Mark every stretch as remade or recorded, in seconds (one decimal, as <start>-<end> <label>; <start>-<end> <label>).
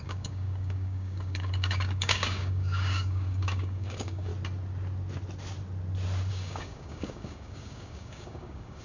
0.0-4.3 remade; 4.3-6.3 recorded; 6.3-8.8 remade